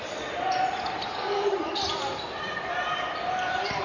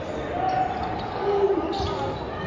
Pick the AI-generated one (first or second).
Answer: first